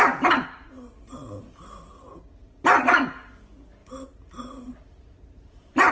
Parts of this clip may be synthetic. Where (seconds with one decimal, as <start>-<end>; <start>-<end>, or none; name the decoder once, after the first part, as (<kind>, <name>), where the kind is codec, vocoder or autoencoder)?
3.8-5.9 (vocoder, BigVGAN v2)